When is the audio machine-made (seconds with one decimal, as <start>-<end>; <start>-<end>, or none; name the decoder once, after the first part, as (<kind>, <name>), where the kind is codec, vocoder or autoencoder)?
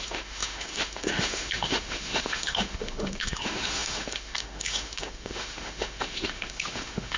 0.0-7.2 (autoencoder, DAC-VAE)